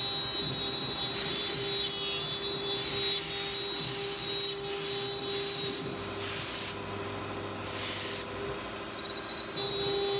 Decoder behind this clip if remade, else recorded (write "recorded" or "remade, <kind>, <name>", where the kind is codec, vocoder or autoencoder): recorded